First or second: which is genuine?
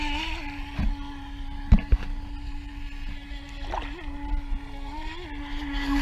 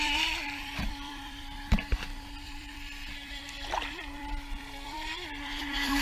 first